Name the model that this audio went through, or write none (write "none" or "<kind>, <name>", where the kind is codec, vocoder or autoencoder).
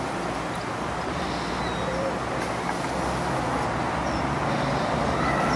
none